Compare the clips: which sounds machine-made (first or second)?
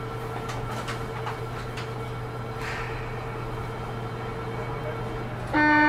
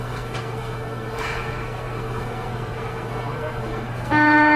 second